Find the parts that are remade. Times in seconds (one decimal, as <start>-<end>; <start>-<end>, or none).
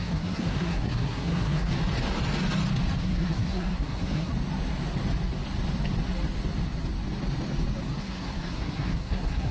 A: 0.0-1.7; 3.0-4.3; 8.0-9.5